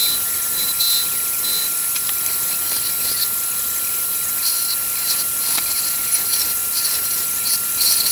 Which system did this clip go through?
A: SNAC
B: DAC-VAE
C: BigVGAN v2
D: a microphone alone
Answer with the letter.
D